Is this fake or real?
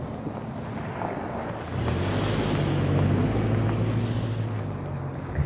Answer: real